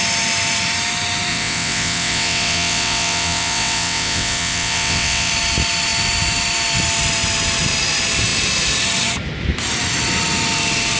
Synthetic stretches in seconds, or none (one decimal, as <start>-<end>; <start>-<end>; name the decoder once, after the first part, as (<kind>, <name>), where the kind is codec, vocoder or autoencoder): 1.3-5.3 (vocoder, WaveNeXt)

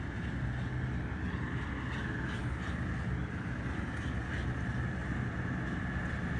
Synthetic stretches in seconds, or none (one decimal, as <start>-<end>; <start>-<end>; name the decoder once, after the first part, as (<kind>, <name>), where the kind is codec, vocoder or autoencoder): none

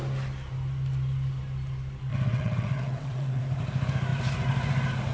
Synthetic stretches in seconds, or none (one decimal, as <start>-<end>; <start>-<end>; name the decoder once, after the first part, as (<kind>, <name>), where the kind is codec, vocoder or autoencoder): 2.1-3.4 (vocoder, WaveNeXt)

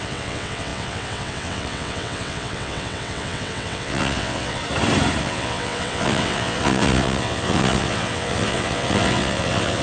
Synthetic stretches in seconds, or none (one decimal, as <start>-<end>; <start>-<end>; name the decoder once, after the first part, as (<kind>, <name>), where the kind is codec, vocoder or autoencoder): 0.0-4.6 (vocoder, WaveNeXt); 5.2-9.8

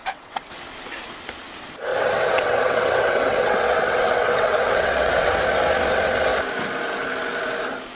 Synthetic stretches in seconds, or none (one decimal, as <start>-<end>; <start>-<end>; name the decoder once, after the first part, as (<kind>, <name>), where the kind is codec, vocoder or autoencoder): 0.0-0.6 (vocoder, WaveNeXt); 1.9-5.4

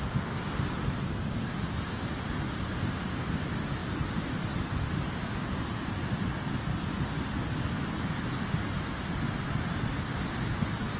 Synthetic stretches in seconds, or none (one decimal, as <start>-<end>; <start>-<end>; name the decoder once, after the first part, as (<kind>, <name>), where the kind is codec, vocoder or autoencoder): none